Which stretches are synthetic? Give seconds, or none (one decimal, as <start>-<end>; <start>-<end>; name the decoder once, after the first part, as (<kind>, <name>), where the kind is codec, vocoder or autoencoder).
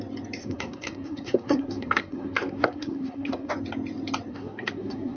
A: 0.4-3.5 (codec, SNAC); 4.3-5.2